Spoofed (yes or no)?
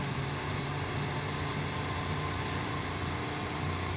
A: no